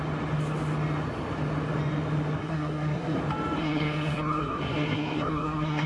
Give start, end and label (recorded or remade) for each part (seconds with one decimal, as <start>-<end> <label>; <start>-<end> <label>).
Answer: 0.0-2.4 recorded; 2.4-3.2 remade; 3.2-3.6 recorded; 3.6-5.9 remade

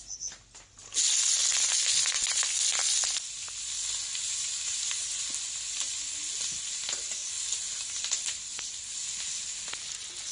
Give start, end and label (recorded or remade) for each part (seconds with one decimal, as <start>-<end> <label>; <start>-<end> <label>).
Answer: 0.0-10.3 recorded

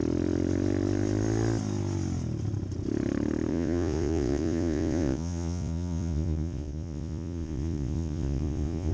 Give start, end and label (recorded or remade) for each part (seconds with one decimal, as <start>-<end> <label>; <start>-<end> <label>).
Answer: 0.0-3.5 recorded; 3.5-8.9 remade

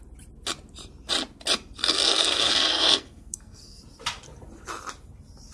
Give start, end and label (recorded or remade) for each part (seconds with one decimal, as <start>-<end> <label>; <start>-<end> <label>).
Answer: 0.0-1.8 recorded; 1.8-3.8 remade; 3.8-5.5 recorded

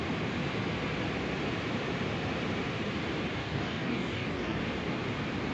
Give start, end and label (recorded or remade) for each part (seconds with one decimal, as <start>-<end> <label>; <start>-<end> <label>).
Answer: 0.0-3.4 recorded; 3.4-4.6 remade; 4.6-5.5 recorded